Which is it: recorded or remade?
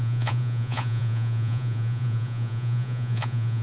remade